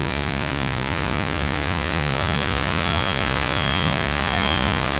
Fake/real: fake